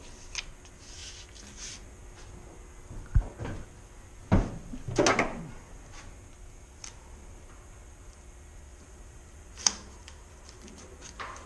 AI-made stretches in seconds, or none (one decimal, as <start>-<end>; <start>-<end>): 8.7-11.5